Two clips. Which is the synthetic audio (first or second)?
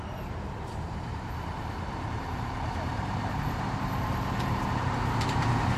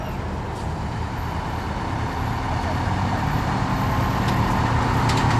first